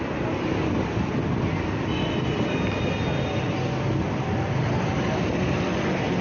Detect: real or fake real